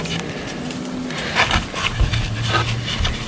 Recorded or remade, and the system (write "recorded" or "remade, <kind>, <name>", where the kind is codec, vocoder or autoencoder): recorded